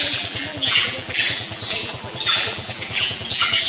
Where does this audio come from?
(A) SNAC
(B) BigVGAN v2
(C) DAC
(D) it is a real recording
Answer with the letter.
B